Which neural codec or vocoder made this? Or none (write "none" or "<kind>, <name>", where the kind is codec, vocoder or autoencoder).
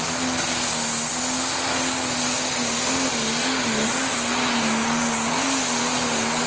none